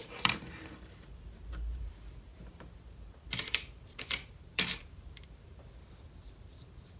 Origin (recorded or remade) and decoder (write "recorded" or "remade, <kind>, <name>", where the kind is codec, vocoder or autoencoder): remade, vocoder, BigVGAN v2